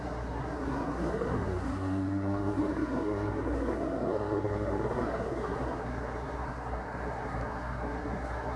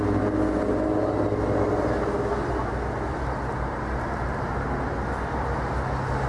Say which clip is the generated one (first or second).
first